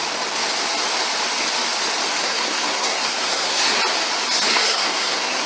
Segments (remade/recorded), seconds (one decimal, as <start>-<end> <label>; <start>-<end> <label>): 0.0-2.2 recorded; 2.2-3.7 remade; 3.7-4.5 recorded; 4.5-5.5 remade